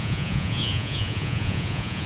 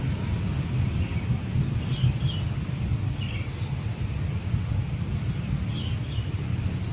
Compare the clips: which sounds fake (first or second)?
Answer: first